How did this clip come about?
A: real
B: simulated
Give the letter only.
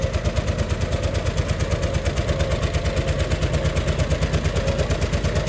A